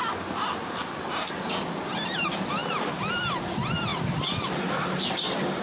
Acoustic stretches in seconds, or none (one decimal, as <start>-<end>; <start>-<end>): 0.0-2.6; 3.4-3.9